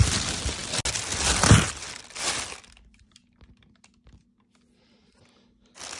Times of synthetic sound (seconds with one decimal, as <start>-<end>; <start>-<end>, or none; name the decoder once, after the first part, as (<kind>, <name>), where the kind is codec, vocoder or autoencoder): none